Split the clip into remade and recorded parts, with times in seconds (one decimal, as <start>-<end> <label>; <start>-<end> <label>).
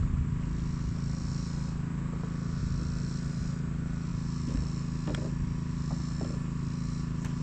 0.0-7.4 recorded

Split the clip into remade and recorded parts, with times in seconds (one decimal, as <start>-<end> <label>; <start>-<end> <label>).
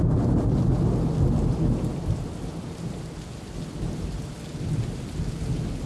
0.0-1.9 recorded; 1.9-5.4 remade; 5.4-5.9 recorded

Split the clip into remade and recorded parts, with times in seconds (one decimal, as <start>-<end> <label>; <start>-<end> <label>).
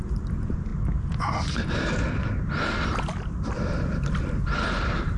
0.0-5.2 recorded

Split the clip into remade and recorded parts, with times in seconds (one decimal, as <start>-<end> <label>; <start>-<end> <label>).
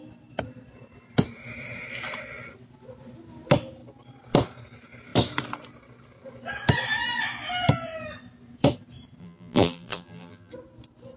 0.0-9.2 recorded; 9.2-10.5 remade; 10.5-11.2 recorded